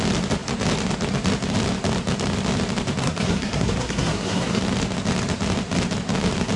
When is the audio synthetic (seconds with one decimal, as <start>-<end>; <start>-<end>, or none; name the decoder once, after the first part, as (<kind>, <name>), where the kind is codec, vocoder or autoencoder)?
3.0-4.6 (codec, SNAC)

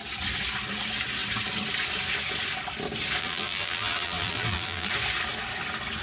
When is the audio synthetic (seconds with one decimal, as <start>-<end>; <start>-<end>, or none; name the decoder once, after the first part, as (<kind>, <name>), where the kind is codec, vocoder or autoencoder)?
3.2-4.9 (vocoder, BigVGAN v2)

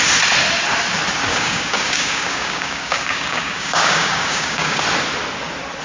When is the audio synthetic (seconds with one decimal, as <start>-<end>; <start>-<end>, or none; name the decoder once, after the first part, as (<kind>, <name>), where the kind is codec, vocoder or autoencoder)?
1.3-4.8 (codec, DAC)

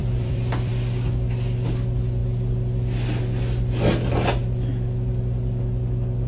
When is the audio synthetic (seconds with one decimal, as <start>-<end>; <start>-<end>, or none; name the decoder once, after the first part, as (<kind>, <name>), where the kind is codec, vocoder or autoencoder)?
0.0-0.7 (vocoder, BigVGAN v2)

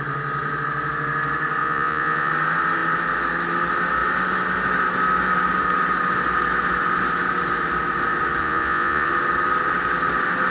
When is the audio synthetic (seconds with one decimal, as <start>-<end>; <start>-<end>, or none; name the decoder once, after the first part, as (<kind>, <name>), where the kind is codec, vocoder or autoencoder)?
1.6-2.3 (vocoder, Vocos); 8.4-9.1

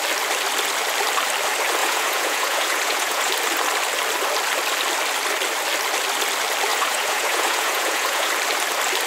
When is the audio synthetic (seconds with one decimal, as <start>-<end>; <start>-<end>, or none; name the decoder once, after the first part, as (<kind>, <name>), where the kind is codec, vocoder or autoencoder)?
1.8-3.3 (vocoder, Vocos); 6.7-8.3

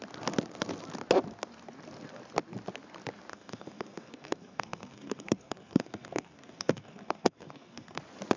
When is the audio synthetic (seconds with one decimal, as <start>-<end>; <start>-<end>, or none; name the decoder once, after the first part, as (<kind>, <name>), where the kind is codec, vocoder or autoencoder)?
3.3-8.0 (codec, SNAC)

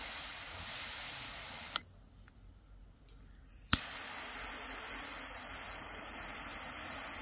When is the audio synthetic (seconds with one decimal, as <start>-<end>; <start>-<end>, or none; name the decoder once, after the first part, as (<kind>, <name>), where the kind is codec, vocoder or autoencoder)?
none